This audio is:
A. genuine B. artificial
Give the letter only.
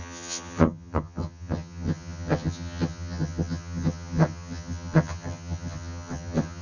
B